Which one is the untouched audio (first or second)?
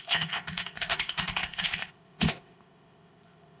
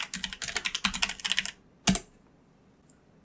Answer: second